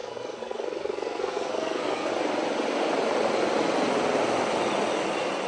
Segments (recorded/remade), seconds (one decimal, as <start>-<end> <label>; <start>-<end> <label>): 0.0-2.1 remade; 2.1-5.5 recorded